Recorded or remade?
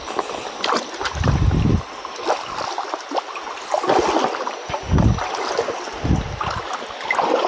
recorded